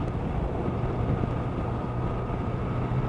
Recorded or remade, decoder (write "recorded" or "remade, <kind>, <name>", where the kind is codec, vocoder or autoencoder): recorded